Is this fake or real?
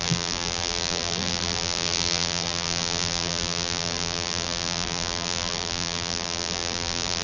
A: fake